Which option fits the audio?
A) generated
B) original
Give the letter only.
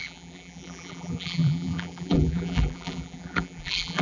A